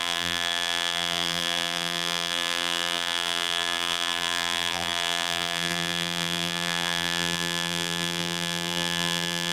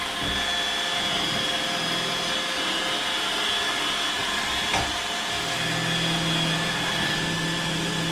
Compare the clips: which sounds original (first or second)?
second